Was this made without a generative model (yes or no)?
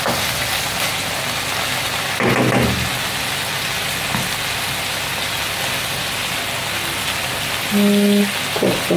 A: yes